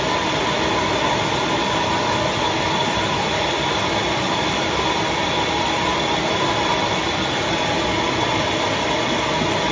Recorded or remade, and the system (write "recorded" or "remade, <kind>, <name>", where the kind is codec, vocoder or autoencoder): remade, vocoder, BigVGAN v2